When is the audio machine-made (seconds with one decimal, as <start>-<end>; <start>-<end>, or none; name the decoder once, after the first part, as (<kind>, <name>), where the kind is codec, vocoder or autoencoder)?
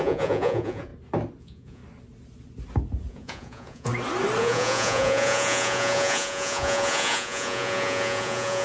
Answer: 0.0-0.9 (vocoder, Vocos); 1.4-1.8; 3.1-3.9; 4.4-8.6